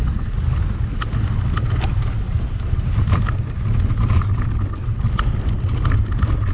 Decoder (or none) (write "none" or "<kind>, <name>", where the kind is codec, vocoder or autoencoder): none